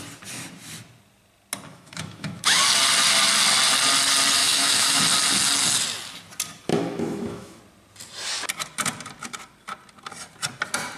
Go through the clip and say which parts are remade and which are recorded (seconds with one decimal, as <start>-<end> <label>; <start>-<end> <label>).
0.0-1.7 recorded; 1.7-2.6 remade; 2.6-4.4 recorded; 4.4-5.0 remade; 5.0-6.7 recorded; 6.7-7.6 remade; 7.6-11.0 recorded